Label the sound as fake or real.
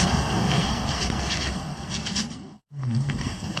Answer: fake